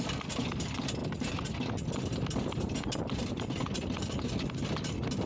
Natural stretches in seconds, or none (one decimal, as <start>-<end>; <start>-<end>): 0.0-5.3